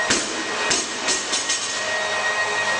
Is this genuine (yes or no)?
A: yes